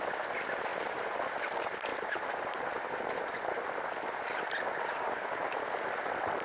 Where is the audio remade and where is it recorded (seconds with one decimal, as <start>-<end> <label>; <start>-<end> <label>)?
0.0-0.7 recorded; 0.7-1.3 remade; 1.3-1.9 recorded; 1.9-5.7 remade; 5.7-6.4 recorded